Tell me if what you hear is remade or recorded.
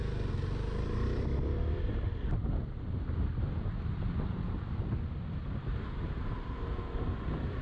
recorded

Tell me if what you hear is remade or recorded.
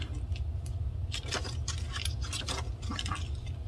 recorded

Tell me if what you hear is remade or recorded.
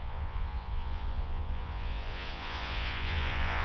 remade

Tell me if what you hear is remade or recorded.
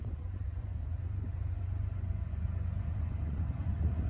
remade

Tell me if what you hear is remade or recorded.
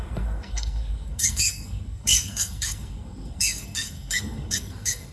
remade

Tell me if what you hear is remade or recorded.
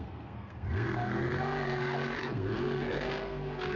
remade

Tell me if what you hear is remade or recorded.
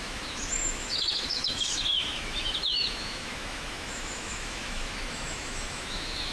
remade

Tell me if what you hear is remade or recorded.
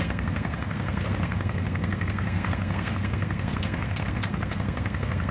remade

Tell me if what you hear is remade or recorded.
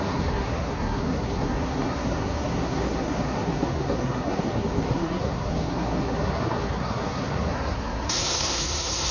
remade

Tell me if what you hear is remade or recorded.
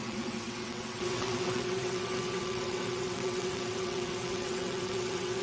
remade